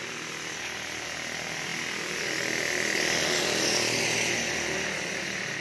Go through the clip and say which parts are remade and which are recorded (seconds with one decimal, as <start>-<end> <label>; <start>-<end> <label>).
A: 0.0-5.6 recorded